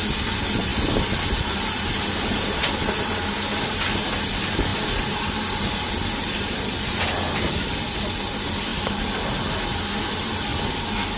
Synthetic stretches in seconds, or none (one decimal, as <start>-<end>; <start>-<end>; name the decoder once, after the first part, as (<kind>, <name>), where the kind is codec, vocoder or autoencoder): none